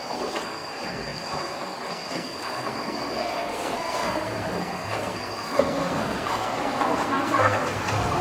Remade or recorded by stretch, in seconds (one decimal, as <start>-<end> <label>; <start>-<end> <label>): 0.0-8.2 remade